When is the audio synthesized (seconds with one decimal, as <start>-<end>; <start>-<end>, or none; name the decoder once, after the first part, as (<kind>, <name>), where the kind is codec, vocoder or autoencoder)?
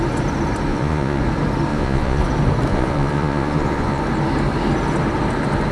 0.7-1.2 (vocoder, Vocos); 1.7-2.2; 2.7-4.0